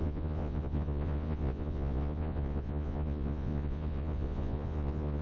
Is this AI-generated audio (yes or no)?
yes